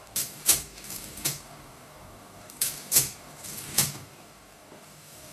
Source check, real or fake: fake